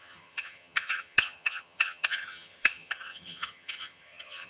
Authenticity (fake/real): fake